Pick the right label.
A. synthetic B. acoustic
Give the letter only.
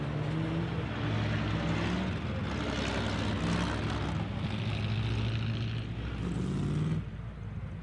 B